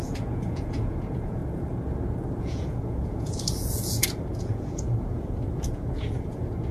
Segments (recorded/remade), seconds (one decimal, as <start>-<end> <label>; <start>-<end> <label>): 0.0-1.4 remade; 1.4-2.4 recorded; 2.4-6.7 remade

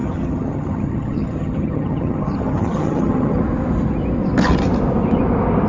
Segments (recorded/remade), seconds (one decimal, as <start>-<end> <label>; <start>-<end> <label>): 0.0-3.4 remade; 3.4-5.7 recorded

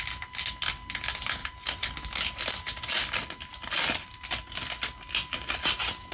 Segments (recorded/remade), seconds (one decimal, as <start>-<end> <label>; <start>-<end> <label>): 0.0-1.4 recorded; 1.4-1.9 remade; 1.9-6.1 recorded

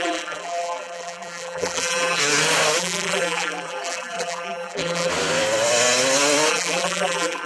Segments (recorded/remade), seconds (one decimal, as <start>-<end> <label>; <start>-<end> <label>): 0.0-2.2 remade; 2.2-2.8 recorded; 2.8-5.1 remade; 5.1-6.5 recorded; 6.5-7.5 remade

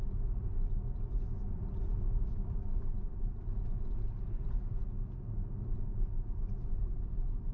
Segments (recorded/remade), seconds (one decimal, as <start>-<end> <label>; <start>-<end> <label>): 0.0-7.5 recorded

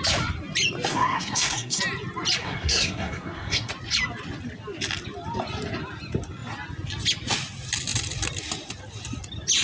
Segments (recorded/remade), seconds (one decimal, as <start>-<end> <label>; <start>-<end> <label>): 0.0-0.9 recorded; 0.9-1.8 remade; 1.8-2.4 recorded; 2.4-3.7 remade; 3.7-9.6 recorded

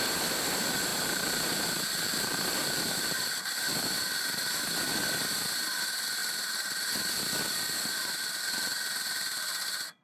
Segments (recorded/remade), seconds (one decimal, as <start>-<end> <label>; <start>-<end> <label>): 0.0-0.9 recorded; 0.9-3.3 remade; 3.3-10.0 recorded

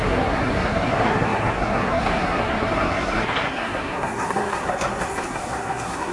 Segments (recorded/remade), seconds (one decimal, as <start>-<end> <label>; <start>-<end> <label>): 0.0-6.1 remade